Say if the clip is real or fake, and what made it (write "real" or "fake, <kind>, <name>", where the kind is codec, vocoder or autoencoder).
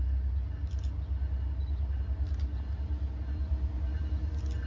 real